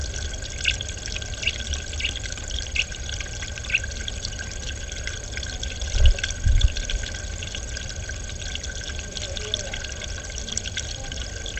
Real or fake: real